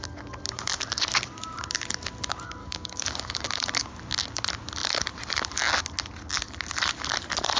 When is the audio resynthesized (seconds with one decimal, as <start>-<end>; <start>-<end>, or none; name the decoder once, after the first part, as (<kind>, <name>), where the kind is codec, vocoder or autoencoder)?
2.6-3.5 (codec, DAC)